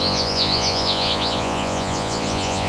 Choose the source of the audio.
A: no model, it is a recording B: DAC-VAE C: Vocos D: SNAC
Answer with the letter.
C